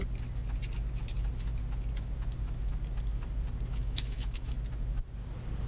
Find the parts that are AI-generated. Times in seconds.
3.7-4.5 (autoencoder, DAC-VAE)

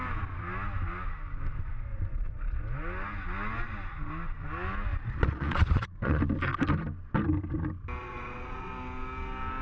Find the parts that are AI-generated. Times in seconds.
1.9-2.6 (vocoder, Vocos); 4.9-6.2; 8.0-8.7

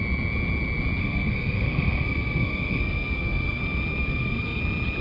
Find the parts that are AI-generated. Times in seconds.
1.0-3.6 (codec, SNAC); 4.0-4.6

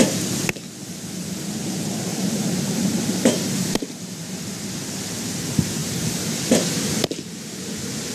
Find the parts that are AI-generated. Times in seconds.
0.8-1.5 (vocoder, BigVGAN v2); 2.1-4.5; 5.8-6.4

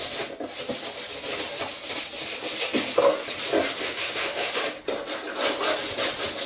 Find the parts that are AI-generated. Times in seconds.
3.8-4.6 (autoencoder, DAC-VAE)

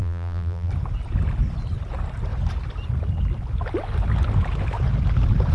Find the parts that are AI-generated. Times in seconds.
0.0-0.7 (vocoder, BigVGAN v2)

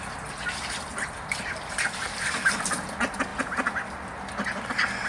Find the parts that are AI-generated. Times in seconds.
0.9-2.9 (vocoder, BigVGAN v2)

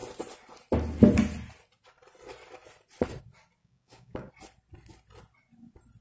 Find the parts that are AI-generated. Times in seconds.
3.6-4.3 (codec, DAC)